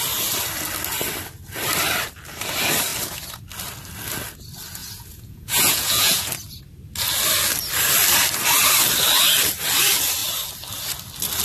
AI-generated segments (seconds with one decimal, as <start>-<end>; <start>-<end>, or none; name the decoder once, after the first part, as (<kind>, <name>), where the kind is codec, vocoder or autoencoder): 4.8-6.3 (vocoder, Vocos)